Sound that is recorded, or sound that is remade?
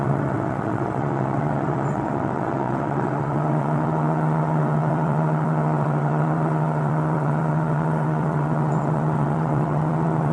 remade